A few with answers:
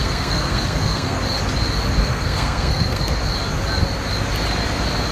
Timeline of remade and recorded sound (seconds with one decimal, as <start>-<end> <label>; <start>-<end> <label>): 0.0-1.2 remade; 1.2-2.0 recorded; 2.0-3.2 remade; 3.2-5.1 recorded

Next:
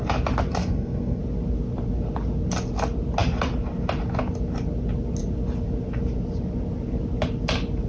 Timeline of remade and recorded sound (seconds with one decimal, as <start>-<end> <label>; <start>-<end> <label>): 0.0-0.6 recorded; 0.6-1.2 remade; 1.2-7.9 recorded

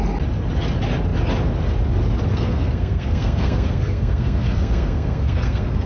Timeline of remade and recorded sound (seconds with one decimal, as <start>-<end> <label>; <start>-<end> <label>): 0.0-2.3 recorded; 2.3-5.9 remade